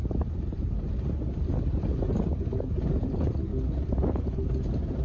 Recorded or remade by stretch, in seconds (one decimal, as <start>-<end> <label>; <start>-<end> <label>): 0.0-2.3 remade; 2.3-2.9 recorded; 2.9-3.5 remade; 3.5-5.0 recorded